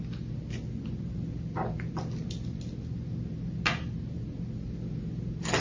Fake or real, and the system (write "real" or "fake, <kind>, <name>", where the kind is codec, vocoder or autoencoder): real